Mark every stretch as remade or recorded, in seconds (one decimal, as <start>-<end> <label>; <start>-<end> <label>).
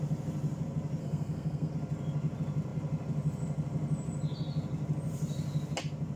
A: 0.0-1.0 recorded; 1.0-1.7 remade; 1.7-6.2 recorded